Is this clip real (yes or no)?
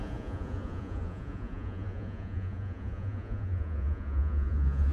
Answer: no